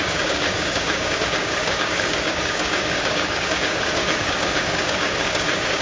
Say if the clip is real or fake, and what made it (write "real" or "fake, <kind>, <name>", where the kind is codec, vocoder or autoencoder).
fake, codec, DAC